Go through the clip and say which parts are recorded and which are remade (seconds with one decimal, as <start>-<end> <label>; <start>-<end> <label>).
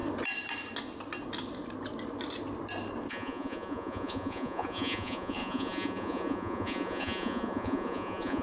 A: 0.0-3.1 recorded; 3.1-8.4 remade